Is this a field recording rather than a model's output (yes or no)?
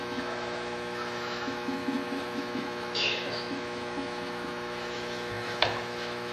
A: no